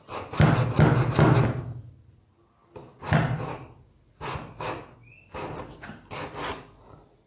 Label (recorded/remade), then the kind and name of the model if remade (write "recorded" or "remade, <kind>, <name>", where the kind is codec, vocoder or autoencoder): recorded